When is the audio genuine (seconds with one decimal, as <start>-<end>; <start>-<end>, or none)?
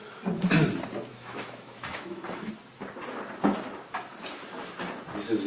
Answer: 0.0-1.1; 2.5-5.5